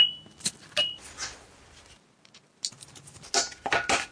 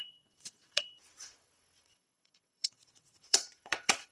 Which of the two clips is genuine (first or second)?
first